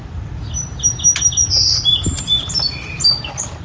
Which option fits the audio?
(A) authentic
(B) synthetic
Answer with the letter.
A